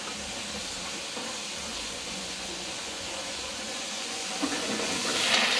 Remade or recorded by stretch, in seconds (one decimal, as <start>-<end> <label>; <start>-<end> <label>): 0.0-1.7 recorded; 1.7-5.1 remade; 5.1-5.6 recorded

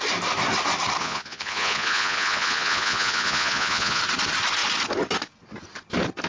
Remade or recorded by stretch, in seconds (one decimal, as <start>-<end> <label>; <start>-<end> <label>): 0.0-1.0 recorded; 1.0-4.0 remade; 4.0-6.3 recorded